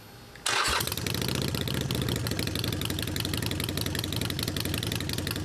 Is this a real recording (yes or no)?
yes